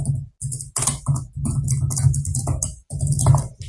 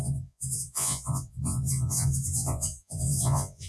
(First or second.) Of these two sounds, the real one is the first